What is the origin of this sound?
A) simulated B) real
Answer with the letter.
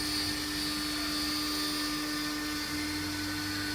B